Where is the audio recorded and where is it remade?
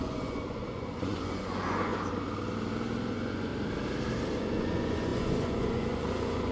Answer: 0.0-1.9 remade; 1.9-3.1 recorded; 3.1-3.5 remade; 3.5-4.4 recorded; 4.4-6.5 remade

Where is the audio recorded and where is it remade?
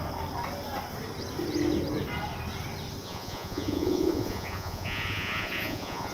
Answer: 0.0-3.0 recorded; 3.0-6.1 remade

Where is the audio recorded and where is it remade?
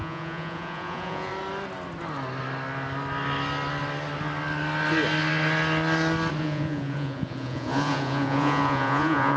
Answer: 0.0-1.3 remade; 1.3-6.4 recorded; 6.4-9.4 remade